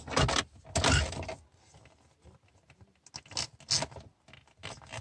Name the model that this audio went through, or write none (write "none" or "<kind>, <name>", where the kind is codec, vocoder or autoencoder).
none